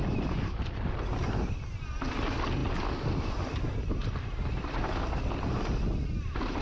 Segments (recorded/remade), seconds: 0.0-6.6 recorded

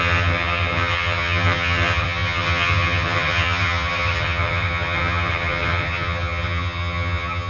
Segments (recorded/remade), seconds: 0.0-7.5 remade

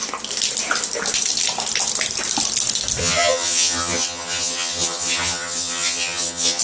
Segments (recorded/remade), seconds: 0.0-3.0 recorded; 3.0-6.6 remade

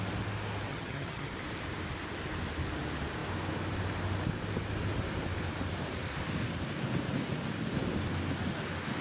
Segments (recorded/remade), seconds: 0.0-0.7 recorded; 0.7-1.3 remade; 1.3-9.0 recorded

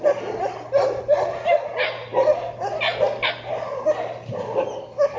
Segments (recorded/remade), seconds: 0.0-5.2 recorded

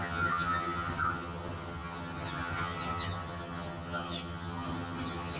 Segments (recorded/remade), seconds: 0.0-5.4 remade

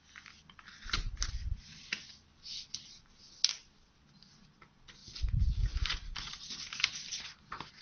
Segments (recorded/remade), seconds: 0.0-7.8 recorded